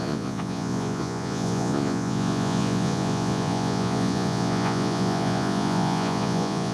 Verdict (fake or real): fake